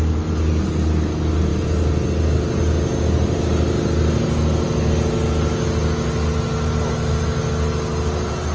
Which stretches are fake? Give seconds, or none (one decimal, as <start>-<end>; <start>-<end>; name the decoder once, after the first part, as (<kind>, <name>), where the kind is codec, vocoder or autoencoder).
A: none

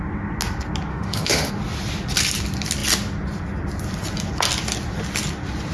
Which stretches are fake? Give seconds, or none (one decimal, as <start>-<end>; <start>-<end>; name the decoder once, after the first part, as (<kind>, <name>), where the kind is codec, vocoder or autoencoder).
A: 0.9-1.5 (autoencoder, DAC-VAE)

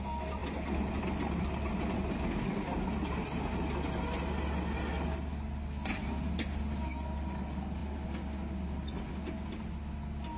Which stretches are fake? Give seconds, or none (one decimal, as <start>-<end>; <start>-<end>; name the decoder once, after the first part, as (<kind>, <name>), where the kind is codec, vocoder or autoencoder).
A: none

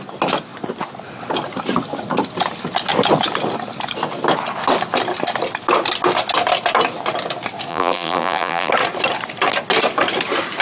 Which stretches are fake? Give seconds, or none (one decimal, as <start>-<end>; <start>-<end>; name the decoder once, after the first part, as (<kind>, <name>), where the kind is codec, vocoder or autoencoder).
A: 7.7-8.7 (vocoder, BigVGAN v2)